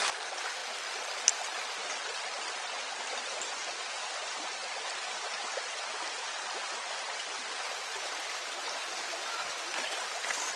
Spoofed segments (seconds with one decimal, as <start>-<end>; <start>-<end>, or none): none